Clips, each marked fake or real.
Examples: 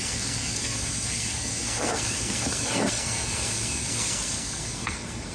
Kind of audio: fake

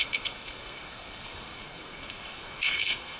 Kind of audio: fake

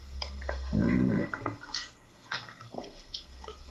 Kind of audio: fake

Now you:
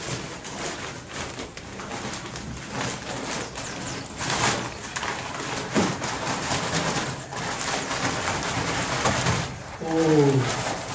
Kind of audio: real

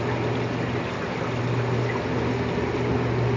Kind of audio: real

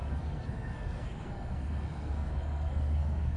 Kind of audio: fake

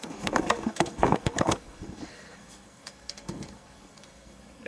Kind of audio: fake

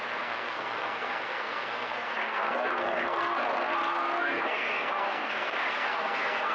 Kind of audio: fake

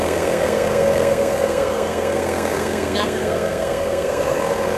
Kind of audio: fake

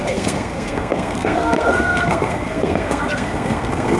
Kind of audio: fake